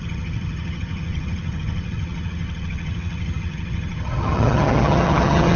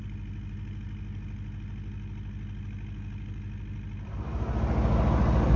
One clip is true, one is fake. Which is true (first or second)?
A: second